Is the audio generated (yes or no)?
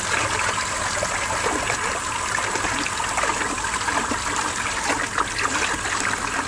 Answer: no